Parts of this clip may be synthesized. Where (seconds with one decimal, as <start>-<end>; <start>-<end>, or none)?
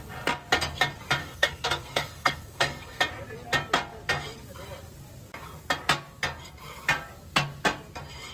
1.2-3.0